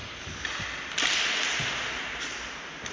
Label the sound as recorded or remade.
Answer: recorded